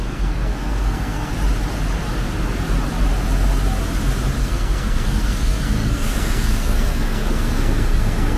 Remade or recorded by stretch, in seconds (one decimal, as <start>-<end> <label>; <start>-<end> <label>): 0.0-1.3 remade; 1.3-4.4 recorded; 4.4-8.4 remade